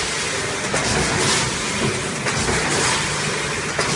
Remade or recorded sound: recorded